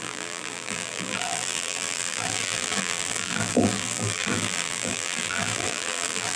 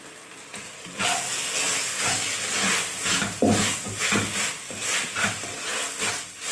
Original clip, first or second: second